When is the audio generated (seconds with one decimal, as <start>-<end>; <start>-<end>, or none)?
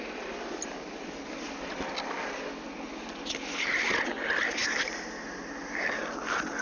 none